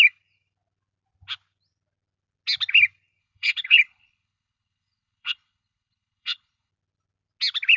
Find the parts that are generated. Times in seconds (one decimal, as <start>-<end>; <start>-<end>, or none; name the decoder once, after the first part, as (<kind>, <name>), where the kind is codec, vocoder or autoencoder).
3.2-6.7 (codec, HILCodec)